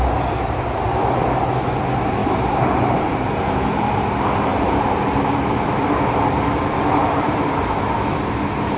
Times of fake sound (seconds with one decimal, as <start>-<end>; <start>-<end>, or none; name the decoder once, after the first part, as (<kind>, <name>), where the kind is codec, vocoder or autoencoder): 2.2-3.6 (vocoder, BigVGAN v2); 4.5-5.6; 7.0-7.7